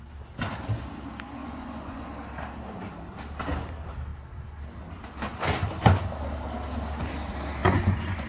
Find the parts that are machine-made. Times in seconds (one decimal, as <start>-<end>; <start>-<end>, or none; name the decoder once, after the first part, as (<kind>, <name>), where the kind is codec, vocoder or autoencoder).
1.4-2.1 (vocoder, Vocos); 7.6-8.3